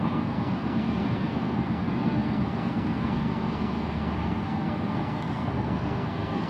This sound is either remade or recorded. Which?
remade